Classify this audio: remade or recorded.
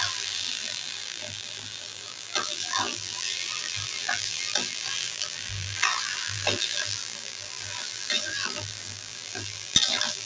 remade